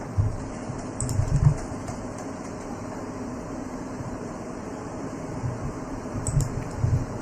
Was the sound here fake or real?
fake